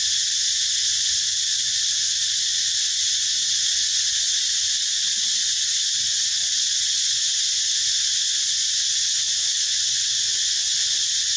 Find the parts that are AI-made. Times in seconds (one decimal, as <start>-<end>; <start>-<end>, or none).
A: 0.0-1.3; 2.8-11.4